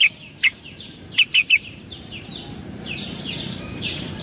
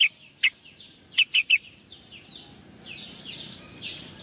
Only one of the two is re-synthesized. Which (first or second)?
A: first